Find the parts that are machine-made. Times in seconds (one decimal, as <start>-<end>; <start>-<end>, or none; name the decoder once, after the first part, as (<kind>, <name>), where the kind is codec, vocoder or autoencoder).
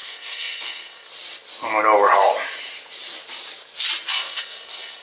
0.0-1.1 (codec, SNAC); 4.1-5.0